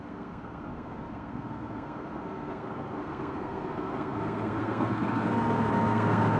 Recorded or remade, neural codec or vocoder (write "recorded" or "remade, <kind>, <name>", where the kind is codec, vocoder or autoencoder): remade, codec, SNAC